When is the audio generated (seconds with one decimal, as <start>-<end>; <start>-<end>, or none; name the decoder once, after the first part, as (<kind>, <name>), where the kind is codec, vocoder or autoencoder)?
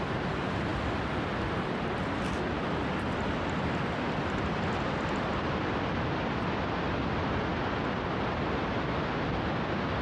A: none